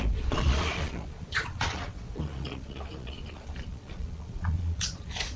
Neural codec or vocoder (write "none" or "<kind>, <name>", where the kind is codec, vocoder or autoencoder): vocoder, Vocos